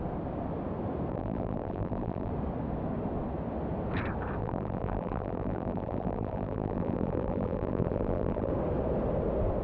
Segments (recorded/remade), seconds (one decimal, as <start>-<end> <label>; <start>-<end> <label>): 0.0-1.1 recorded; 1.1-2.3 remade; 2.3-4.4 recorded; 4.4-8.5 remade; 8.5-9.6 recorded